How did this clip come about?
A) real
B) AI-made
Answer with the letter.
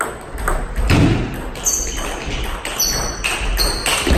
A